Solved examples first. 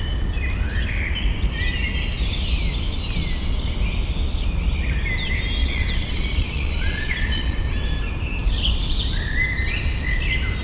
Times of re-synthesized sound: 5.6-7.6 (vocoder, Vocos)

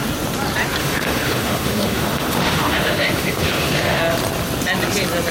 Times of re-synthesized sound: 0.8-4.0 (autoencoder, DAC-VAE)

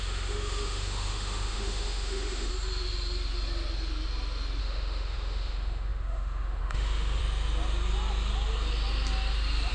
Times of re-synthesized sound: 0.0-2.5 (autoencoder, DAC-VAE); 4.6-7.2

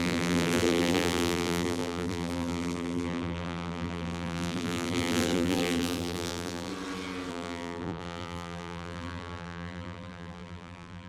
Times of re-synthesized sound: 0.0-6.7 (vocoder, BigVGAN v2); 7.3-11.1

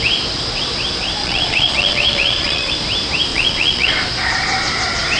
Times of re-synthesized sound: 1.2-2.7 (vocoder, Vocos); 3.3-3.9

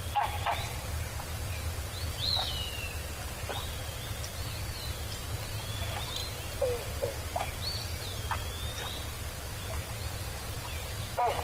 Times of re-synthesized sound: none